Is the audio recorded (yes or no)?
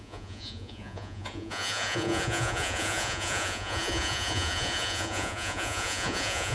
no